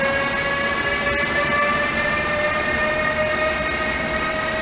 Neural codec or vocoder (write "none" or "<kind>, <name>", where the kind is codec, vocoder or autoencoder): none